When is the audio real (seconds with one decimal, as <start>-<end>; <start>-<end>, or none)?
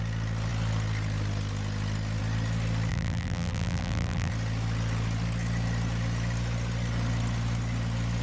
0.0-2.9; 4.3-8.2